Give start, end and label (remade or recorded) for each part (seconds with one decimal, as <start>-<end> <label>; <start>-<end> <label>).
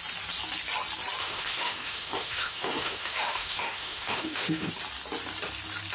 0.0-1.2 recorded; 1.2-4.7 remade; 4.7-5.9 recorded